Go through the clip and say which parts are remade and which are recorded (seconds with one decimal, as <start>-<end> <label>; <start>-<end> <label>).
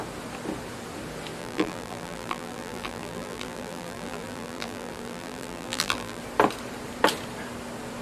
0.0-1.4 recorded; 1.4-6.2 remade; 6.2-8.0 recorded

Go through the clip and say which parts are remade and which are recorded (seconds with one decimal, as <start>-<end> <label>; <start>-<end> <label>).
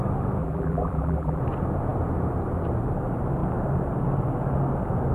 0.0-0.4 recorded; 0.4-1.4 remade; 1.4-5.1 recorded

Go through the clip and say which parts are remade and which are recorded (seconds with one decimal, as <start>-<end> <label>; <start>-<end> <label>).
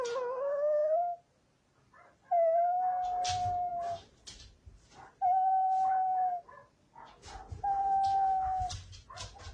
0.0-9.5 recorded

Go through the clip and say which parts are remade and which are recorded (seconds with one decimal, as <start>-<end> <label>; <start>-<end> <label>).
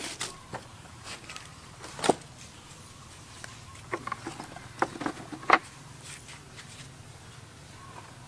0.0-0.7 recorded; 0.7-2.1 remade; 2.1-5.6 recorded; 5.6-6.8 remade; 6.8-8.3 recorded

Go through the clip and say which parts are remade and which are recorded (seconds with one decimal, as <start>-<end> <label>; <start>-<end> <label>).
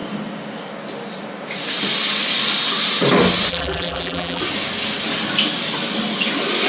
0.0-3.5 recorded; 3.5-4.4 remade; 4.4-6.7 recorded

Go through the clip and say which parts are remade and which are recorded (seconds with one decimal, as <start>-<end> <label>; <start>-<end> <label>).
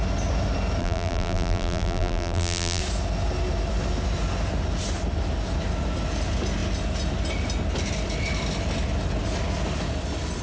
0.0-0.8 recorded; 0.8-2.8 remade; 2.8-10.4 recorded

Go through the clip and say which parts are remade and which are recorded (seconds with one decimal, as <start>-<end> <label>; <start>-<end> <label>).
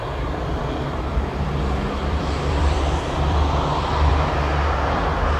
0.0-1.1 recorded; 1.1-4.1 remade; 4.1-5.4 recorded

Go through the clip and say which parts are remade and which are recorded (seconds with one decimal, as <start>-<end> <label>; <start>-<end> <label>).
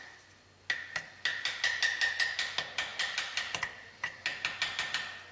0.0-2.9 recorded; 2.9-3.4 remade; 3.4-5.3 recorded